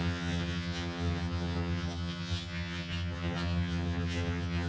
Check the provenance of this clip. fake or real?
fake